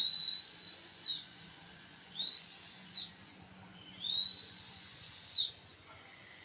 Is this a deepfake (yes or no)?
yes